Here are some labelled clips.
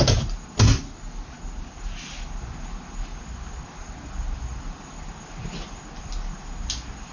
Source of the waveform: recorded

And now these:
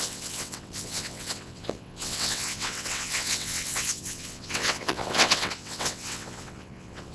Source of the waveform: remade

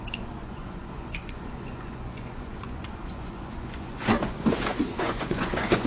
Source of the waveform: remade